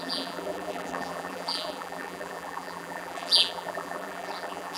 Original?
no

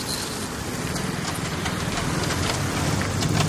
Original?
yes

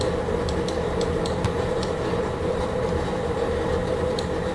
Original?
yes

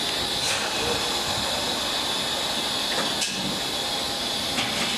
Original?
yes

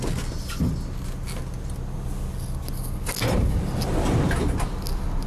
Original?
yes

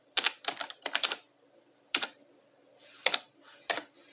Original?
no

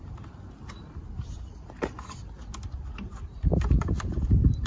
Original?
no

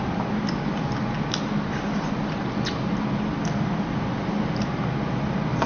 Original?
yes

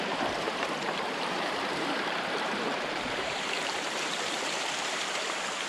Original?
no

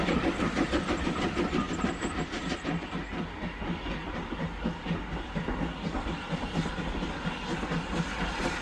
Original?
yes